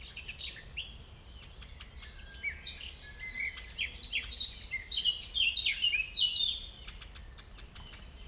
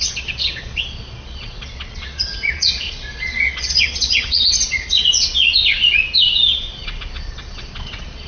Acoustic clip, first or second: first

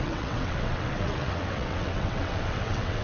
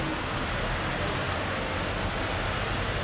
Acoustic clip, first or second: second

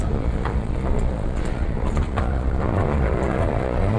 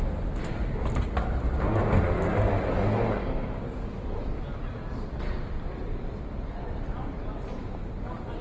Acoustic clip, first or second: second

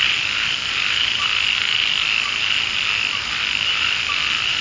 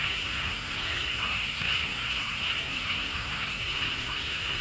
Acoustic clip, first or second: first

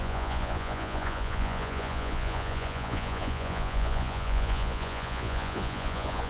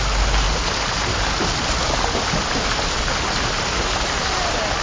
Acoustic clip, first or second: second